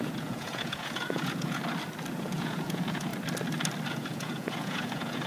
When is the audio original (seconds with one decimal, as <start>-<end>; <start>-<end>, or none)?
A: 1.6-2.1; 3.1-3.9